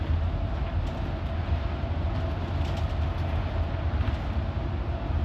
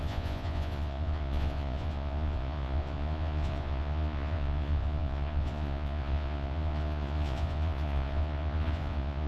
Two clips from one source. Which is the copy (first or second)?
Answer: second